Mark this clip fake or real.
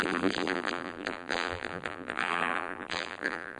fake